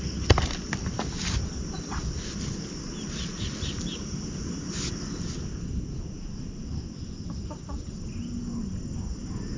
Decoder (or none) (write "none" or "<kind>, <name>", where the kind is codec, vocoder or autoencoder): none